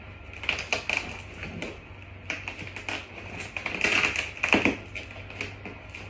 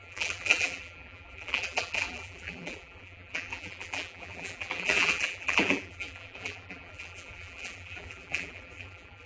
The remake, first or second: second